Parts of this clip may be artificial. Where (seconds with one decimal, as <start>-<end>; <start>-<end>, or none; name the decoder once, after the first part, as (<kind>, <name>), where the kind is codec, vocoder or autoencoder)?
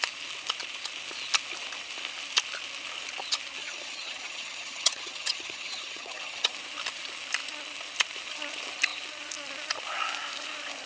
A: 3.6-6.5 (vocoder, HiFi-GAN)